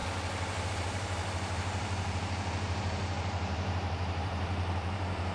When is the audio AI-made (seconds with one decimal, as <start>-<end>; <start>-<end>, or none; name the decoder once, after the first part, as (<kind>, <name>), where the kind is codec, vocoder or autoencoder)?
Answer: 0.7-5.3 (vocoder, BigVGAN v2)